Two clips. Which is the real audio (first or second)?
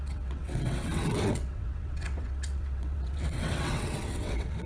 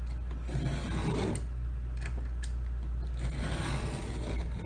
second